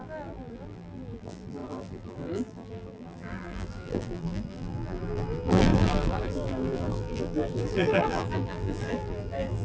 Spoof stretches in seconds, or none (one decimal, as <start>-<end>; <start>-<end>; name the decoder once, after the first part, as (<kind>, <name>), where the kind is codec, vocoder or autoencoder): 0.0-9.6 (vocoder, BigVGAN v2)